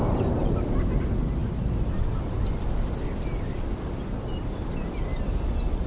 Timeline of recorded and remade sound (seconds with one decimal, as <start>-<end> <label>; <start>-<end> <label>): 0.0-5.9 recorded